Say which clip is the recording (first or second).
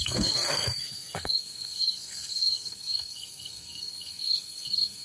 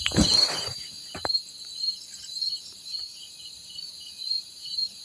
second